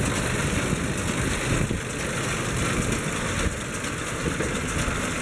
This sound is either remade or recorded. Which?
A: recorded